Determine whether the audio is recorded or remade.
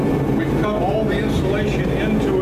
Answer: recorded